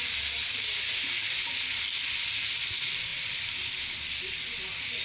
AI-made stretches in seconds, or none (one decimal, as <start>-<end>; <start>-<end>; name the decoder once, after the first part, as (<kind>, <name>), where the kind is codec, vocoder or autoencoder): none